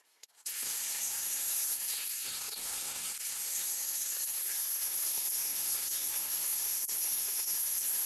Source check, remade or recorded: remade